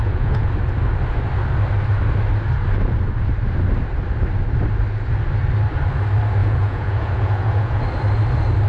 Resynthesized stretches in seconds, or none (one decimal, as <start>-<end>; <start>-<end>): 0.0-0.5; 6.4-7.8